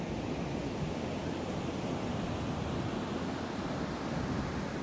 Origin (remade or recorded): recorded